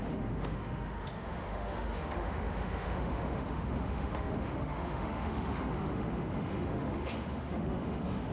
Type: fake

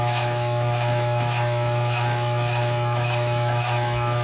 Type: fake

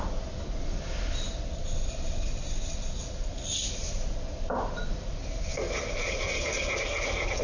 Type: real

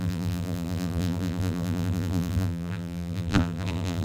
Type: fake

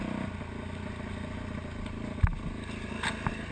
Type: real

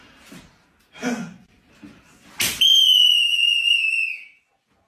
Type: real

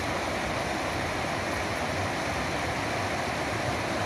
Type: real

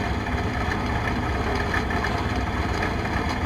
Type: real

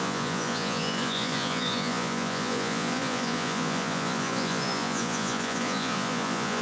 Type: fake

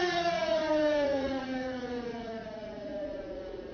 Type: fake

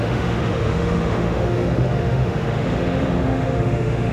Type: fake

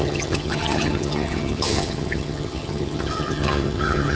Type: fake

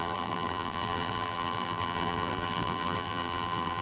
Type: fake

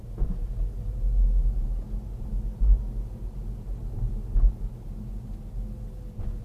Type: real